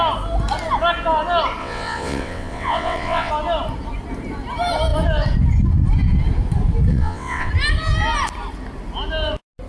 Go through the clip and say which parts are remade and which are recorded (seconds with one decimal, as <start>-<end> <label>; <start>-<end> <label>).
0.0-1.6 recorded; 1.6-3.3 remade; 3.3-6.9 recorded; 6.9-7.5 remade; 7.5-9.7 recorded